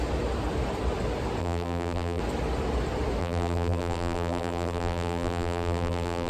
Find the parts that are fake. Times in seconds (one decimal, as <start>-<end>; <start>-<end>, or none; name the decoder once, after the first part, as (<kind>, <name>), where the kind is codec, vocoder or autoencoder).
1.4-2.2 (vocoder, BigVGAN v2); 3.2-6.3